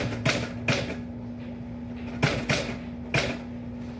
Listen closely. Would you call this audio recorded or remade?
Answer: recorded